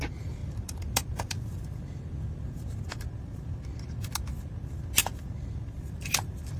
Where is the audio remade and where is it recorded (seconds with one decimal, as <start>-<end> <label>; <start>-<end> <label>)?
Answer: 0.0-0.4 recorded; 0.4-2.4 remade; 2.4-5.0 recorded; 5.0-6.6 remade